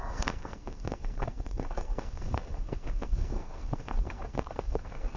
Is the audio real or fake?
fake